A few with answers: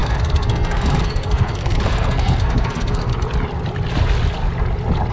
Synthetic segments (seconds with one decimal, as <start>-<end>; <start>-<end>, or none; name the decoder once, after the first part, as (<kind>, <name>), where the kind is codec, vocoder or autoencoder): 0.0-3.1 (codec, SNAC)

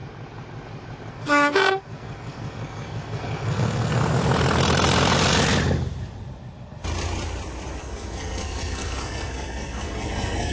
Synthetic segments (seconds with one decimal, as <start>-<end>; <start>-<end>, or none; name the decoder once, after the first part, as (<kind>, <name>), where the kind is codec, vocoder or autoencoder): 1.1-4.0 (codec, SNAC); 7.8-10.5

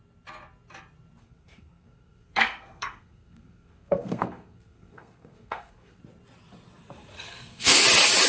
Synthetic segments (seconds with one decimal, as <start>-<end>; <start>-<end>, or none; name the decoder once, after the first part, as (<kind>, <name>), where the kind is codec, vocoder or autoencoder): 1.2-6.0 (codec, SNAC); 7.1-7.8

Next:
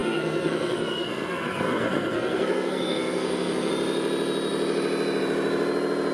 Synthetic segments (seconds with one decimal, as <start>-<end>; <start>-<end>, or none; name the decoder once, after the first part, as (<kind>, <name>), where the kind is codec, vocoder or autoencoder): 0.0-3.7 (codec, SNAC)

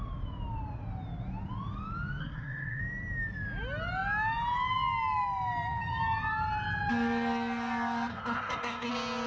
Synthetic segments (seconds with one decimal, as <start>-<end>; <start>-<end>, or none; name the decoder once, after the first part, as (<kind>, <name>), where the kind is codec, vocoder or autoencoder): 2.2-2.8 (codec, SNAC); 8.1-8.9

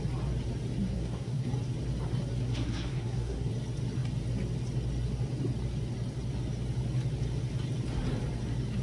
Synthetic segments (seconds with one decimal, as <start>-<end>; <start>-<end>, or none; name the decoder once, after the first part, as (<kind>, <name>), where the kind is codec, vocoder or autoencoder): 0.9-1.5 (codec, SNAC); 2.4-3.5